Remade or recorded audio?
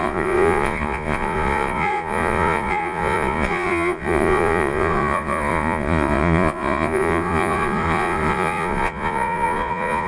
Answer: remade